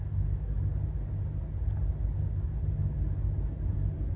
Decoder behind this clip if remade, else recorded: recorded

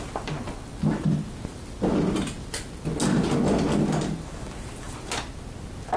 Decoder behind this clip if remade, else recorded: recorded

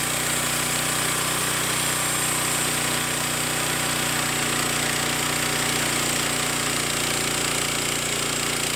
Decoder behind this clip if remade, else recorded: recorded